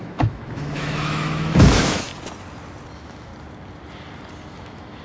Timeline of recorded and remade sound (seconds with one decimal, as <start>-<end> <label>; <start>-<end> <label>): 0.0-2.1 remade; 2.1-2.9 recorded; 2.9-3.3 remade; 3.3-4.5 recorded; 4.5-5.0 remade